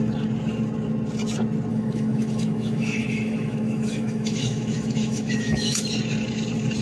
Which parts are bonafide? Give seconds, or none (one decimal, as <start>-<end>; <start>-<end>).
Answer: 0.0-1.7; 5.8-6.8